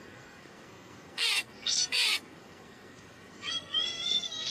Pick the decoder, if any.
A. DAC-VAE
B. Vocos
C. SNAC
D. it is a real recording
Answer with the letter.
C